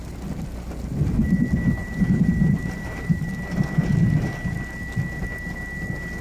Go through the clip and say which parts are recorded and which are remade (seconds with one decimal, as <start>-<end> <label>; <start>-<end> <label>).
0.0-1.8 recorded; 1.8-3.3 remade; 3.3-6.2 recorded